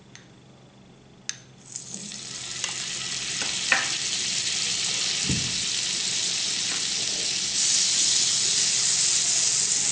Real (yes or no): yes